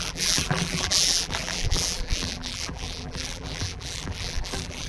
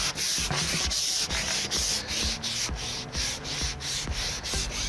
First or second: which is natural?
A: second